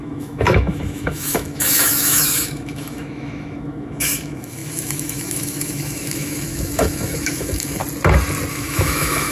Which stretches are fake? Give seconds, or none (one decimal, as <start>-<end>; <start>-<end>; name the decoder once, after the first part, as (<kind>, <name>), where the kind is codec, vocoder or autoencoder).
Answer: 0.0-7.8 (autoencoder, DAC-VAE); 8.5-9.3